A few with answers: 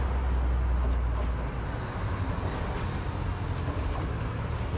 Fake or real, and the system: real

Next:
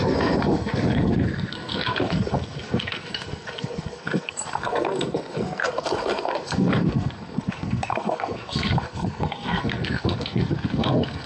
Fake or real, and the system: fake, codec, SNAC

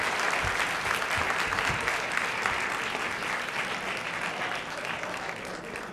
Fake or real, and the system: real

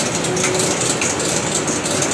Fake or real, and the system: real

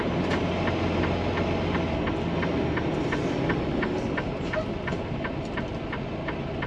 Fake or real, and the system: real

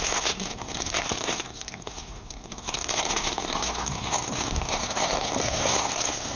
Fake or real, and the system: fake, codec, SNAC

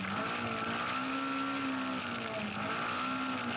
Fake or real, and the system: real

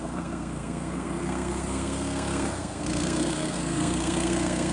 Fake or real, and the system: fake, codec, SNAC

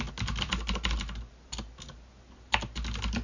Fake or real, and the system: real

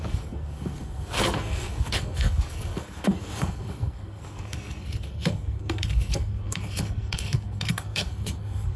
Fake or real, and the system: fake, codec, SNAC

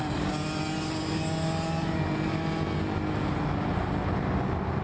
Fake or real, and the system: real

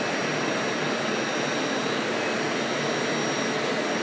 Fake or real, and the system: real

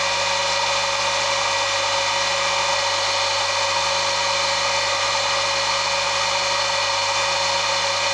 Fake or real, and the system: real